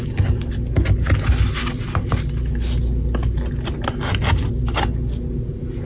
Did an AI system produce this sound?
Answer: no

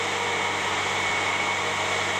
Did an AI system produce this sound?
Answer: no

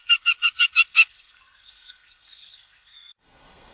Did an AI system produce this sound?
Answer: yes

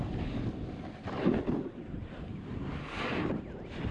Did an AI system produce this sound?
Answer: no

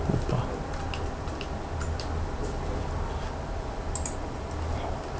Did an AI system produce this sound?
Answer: no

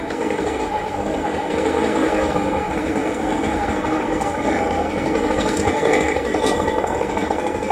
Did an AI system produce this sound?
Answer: yes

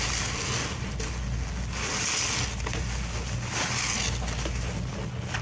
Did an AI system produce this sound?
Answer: no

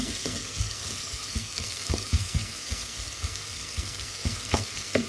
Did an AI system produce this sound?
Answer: yes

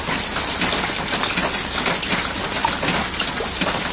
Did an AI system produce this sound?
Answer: no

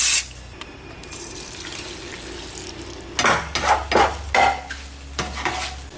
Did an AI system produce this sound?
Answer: no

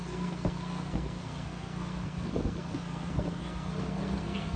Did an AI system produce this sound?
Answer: yes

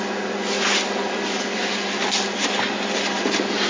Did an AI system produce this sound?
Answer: no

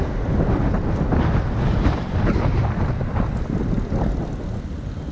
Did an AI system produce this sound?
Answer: no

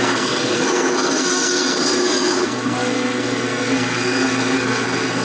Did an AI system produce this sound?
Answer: yes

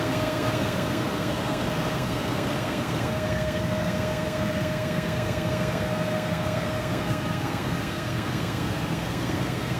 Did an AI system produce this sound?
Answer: yes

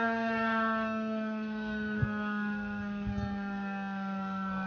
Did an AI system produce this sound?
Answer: yes